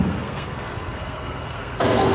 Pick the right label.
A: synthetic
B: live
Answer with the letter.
A